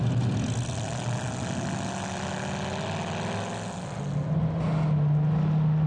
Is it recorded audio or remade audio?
recorded